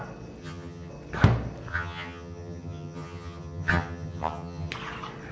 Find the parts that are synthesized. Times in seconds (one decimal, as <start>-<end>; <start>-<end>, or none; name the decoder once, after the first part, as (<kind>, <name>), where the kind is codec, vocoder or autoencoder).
0.4-0.9 (vocoder, HiFi-GAN); 1.7-4.7